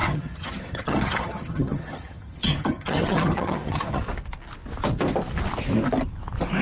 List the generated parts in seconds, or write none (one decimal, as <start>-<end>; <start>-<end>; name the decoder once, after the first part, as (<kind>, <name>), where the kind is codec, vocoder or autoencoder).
0.0-4.0 (vocoder, HiFi-GAN)